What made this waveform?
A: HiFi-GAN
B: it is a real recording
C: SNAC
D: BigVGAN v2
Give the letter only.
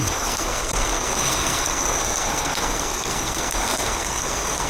C